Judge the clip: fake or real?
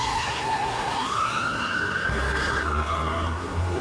fake